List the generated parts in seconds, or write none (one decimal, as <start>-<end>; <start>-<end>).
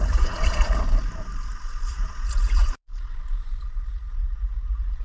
0.0-0.8; 1.9-2.9; 3.9-5.0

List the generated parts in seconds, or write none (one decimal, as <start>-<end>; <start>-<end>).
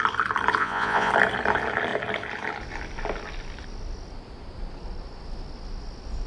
0.6-1.1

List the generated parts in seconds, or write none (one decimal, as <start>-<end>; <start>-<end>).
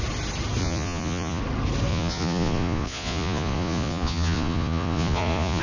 0.6-1.4; 1.9-5.6